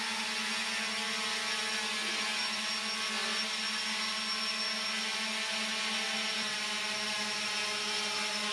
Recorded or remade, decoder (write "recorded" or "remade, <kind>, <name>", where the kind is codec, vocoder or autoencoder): recorded